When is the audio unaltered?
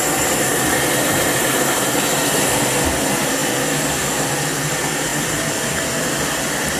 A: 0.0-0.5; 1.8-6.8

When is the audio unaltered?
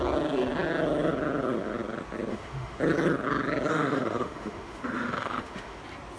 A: 0.0-2.3; 2.8-3.7; 5.8-6.2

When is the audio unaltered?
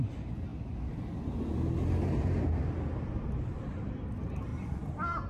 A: 0.5-3.6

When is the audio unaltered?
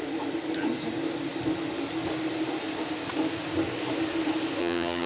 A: 0.0-4.6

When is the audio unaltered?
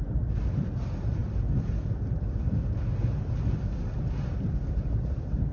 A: 0.0-5.5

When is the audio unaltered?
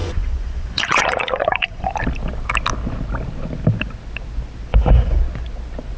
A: 1.9-4.7; 5.2-6.0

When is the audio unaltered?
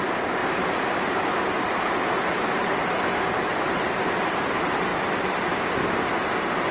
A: 0.0-6.7